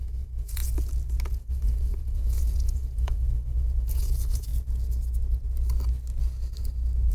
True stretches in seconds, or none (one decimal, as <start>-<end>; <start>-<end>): 0.6-1.3; 4.5-7.1